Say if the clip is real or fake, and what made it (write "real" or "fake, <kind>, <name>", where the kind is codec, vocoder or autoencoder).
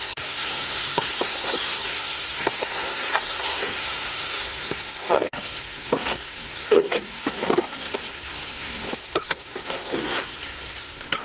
fake, codec, SNAC